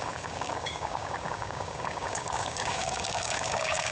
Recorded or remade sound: remade